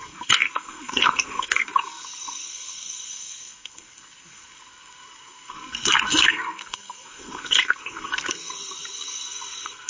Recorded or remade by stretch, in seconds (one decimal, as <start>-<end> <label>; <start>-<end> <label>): 0.0-9.9 remade